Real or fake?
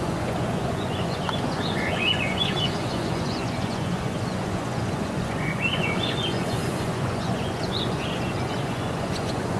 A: fake